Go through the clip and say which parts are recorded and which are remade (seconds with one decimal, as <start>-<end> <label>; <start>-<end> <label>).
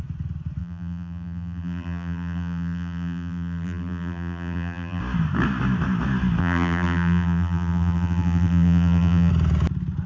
0.0-0.6 recorded; 0.6-5.0 remade; 5.0-6.4 recorded; 6.4-9.3 remade; 9.3-10.1 recorded